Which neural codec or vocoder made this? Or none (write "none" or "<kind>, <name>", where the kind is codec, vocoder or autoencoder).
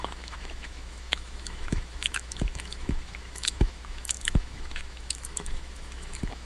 autoencoder, DAC-VAE